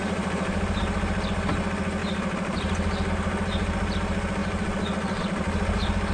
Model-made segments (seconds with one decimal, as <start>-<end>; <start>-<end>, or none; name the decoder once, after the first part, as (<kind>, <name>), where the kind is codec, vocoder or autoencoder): 0.0-0.8 (vocoder, BigVGAN v2); 4.4-5.2